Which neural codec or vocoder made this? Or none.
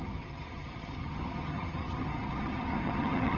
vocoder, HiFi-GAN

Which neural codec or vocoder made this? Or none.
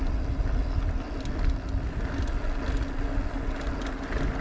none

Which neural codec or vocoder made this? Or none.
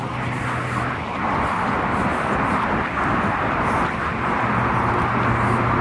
none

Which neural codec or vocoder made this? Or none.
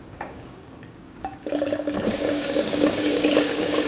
codec, DAC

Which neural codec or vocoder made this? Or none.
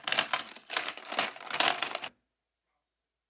none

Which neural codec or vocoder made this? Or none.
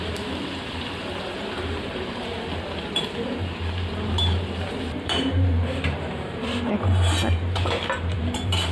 vocoder, BigVGAN v2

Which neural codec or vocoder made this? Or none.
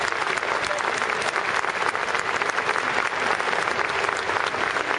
none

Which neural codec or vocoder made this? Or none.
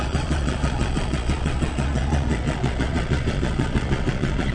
vocoder, Vocos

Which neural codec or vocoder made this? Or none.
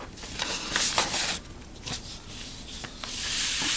none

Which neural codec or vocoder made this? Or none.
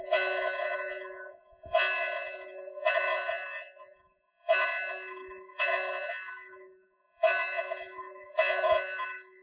vocoder, Vocos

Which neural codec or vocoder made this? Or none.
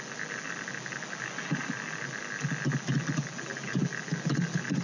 none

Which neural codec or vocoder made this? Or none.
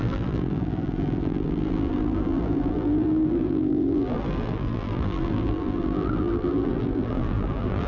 vocoder, BigVGAN v2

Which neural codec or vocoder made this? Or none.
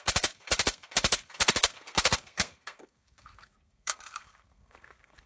codec, SNAC